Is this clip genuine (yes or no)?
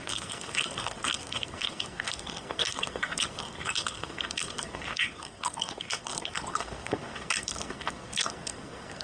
no